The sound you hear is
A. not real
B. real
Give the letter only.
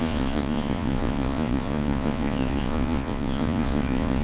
A